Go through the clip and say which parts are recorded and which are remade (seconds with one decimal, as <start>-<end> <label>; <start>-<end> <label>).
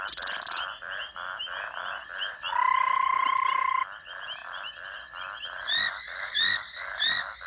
0.0-7.5 recorded